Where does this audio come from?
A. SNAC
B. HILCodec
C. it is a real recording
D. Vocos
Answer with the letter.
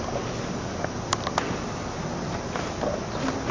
C